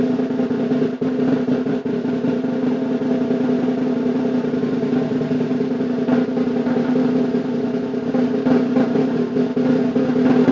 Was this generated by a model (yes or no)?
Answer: no